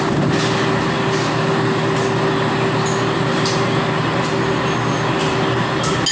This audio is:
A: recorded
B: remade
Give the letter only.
A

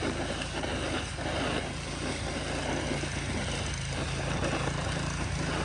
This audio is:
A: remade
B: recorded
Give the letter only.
B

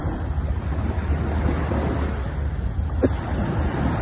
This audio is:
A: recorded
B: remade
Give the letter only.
A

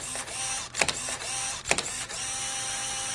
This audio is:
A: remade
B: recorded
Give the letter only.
B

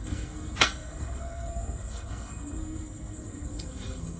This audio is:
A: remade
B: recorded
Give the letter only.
A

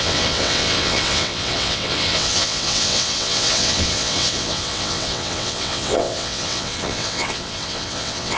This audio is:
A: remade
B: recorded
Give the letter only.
A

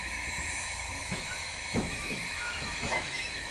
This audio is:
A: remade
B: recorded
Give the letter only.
A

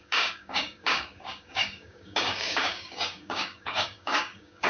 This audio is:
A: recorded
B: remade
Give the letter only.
B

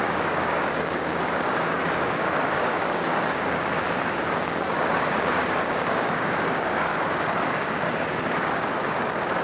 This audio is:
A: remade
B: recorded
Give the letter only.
A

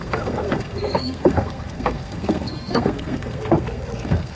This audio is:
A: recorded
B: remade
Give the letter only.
B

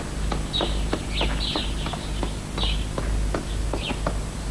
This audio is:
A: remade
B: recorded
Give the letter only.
B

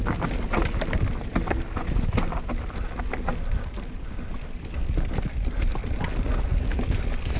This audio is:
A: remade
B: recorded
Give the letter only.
B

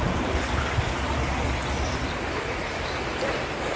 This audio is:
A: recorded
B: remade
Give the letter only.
A